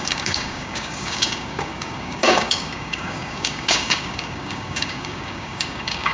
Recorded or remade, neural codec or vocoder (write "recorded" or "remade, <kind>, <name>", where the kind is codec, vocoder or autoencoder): remade, codec, DAC